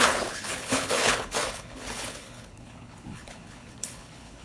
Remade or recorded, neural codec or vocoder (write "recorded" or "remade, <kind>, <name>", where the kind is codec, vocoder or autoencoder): remade, codec, HILCodec